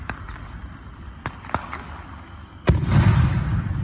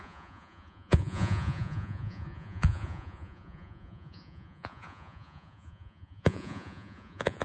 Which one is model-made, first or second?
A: second